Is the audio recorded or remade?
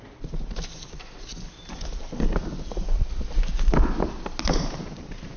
recorded